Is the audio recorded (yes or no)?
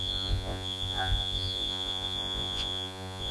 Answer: no